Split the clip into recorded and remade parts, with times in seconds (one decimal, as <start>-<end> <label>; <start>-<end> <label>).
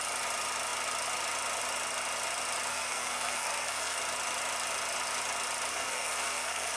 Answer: 0.0-2.7 recorded; 2.7-4.0 remade; 4.0-5.7 recorded; 5.7-6.8 remade